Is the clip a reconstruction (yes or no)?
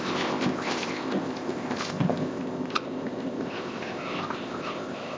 yes